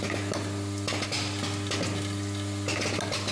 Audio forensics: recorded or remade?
recorded